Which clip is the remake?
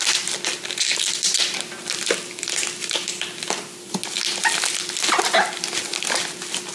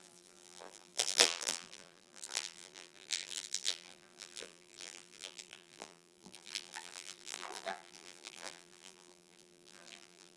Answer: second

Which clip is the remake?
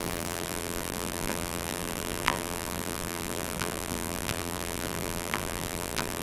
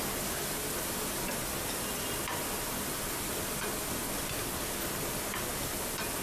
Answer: first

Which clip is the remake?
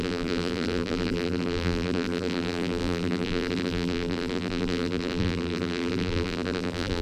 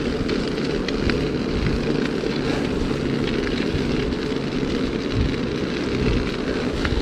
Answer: first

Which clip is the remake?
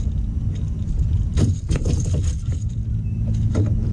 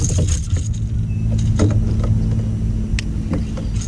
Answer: first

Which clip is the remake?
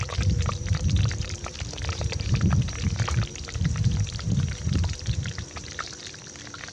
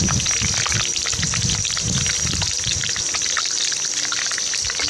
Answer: first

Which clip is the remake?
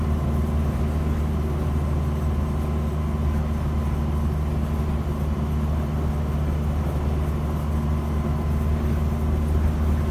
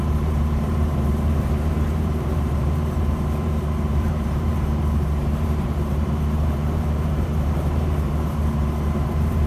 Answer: second